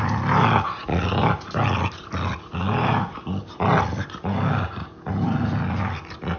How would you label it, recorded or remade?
recorded